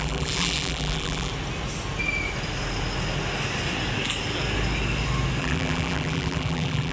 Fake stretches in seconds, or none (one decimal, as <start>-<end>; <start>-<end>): 0.0-1.3; 5.4-6.9